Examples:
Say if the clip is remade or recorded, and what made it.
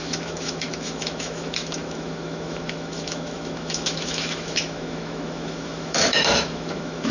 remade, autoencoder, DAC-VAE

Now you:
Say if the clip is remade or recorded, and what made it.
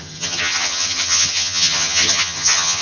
remade, vocoder, HiFi-GAN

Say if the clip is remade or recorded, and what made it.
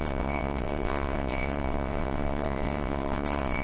remade, vocoder, WaveNeXt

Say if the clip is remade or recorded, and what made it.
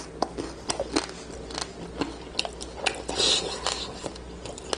recorded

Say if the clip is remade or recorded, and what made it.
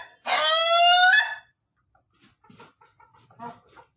recorded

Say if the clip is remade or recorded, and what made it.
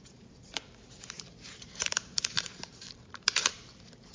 remade, vocoder, BigVGAN v2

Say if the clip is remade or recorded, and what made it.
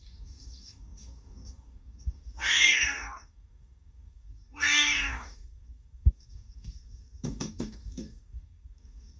remade, codec, DAC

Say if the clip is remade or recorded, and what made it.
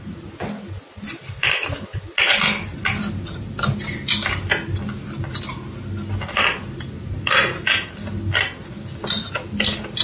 recorded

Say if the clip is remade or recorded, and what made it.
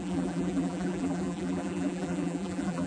remade, vocoder, BigVGAN v2